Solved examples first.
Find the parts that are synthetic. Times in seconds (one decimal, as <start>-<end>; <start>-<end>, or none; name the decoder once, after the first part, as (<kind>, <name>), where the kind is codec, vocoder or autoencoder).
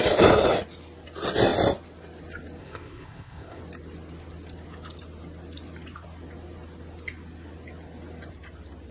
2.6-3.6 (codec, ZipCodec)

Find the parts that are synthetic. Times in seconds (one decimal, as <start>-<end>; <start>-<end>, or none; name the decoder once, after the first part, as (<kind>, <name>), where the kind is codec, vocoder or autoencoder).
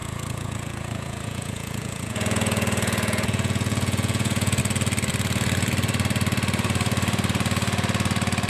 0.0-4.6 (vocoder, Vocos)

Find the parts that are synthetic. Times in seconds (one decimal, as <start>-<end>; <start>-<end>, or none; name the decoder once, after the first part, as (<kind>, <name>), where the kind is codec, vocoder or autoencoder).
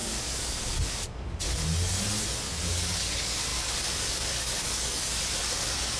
0.0-1.6 (codec, DAC); 2.6-6.0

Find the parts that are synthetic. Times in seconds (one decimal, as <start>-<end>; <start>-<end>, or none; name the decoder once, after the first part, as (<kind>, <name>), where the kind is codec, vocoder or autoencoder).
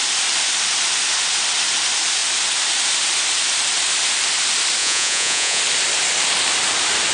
4.8-5.6 (vocoder, Vocos)